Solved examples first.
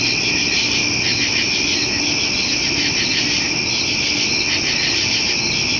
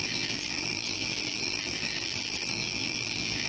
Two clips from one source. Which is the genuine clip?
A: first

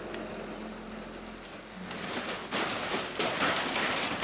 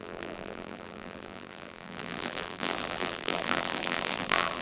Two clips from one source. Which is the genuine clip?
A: first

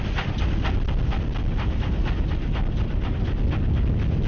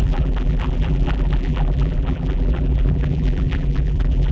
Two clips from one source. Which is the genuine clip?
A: first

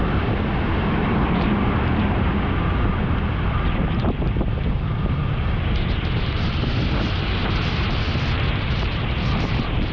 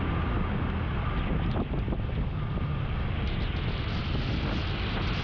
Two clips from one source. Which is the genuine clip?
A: second